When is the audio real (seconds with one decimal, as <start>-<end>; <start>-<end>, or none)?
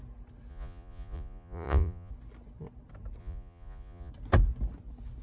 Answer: 0.0-0.5; 2.1-3.2; 4.1-5.2